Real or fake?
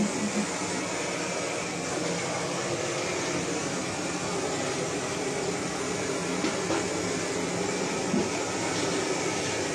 real